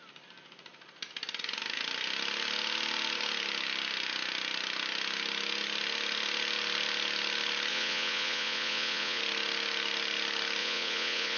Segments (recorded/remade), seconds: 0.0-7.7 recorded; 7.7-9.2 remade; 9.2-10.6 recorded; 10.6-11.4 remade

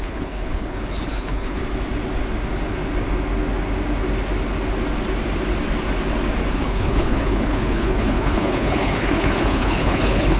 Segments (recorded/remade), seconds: 0.0-1.6 remade; 1.6-6.5 recorded; 6.5-10.4 remade

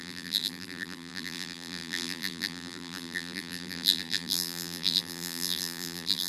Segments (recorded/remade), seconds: 0.0-6.3 remade

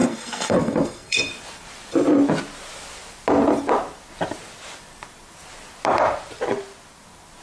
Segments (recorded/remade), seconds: 0.0-1.2 remade; 1.2-7.4 recorded